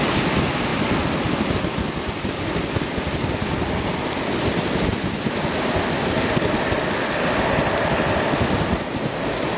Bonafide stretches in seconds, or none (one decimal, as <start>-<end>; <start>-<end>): 0.0-9.6